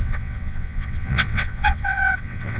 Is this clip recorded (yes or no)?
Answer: no